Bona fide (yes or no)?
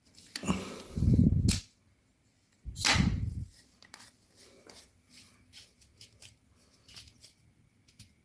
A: yes